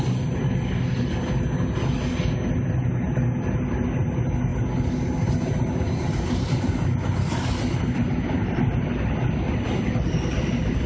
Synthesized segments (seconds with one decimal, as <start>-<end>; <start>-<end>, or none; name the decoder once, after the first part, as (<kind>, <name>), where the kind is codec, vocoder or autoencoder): none